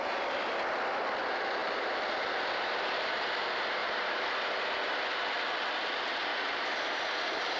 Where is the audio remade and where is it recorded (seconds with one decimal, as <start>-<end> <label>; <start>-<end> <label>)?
0.0-1.6 recorded; 1.6-3.1 remade; 3.1-3.8 recorded; 3.8-4.3 remade; 4.3-6.3 recorded; 6.3-7.6 remade